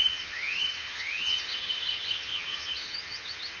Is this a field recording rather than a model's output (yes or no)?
no